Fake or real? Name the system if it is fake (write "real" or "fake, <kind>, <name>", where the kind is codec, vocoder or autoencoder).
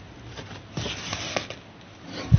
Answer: real